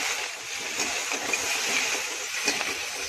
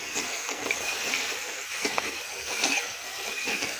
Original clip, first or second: first